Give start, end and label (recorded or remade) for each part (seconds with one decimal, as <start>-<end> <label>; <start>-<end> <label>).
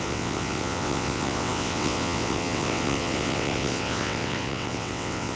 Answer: 0.0-5.4 remade